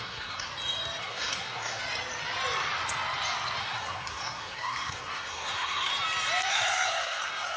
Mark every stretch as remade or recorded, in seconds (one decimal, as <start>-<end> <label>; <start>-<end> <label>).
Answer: 0.0-0.5 remade; 0.5-1.0 recorded; 1.0-1.8 remade; 1.8-3.6 recorded; 3.6-5.9 remade; 5.9-6.5 recorded; 6.5-7.6 remade